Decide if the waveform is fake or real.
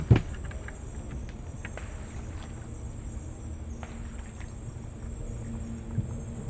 real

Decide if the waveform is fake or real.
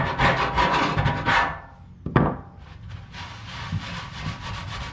real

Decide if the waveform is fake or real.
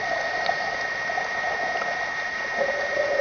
real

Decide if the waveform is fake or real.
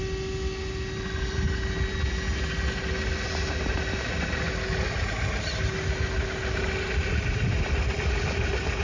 real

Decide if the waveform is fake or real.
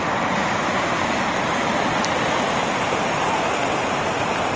real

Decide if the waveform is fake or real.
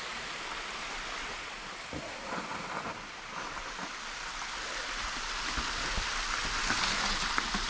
real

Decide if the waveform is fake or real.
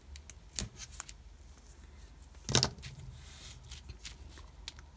real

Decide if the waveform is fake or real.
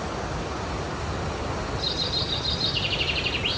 real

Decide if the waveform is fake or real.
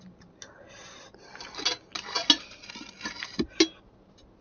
real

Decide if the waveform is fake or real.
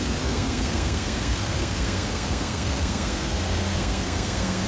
fake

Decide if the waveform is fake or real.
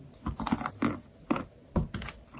real